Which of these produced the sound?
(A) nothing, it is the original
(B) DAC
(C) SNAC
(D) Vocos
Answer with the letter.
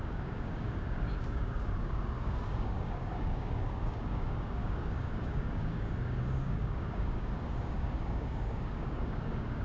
B